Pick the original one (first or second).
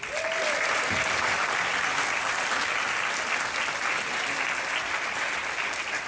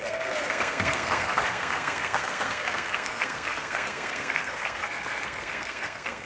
first